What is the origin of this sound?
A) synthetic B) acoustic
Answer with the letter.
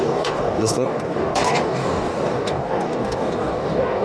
A